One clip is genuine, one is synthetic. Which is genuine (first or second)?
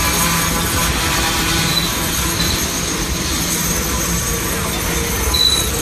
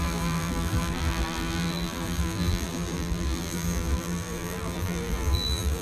first